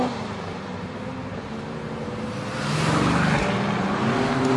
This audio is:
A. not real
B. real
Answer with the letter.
B